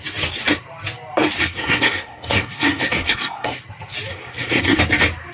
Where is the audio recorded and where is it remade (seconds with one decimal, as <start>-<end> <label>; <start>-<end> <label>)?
0.0-1.4 recorded; 1.4-3.6 remade; 3.6-4.1 recorded; 4.1-4.8 remade; 4.8-5.3 recorded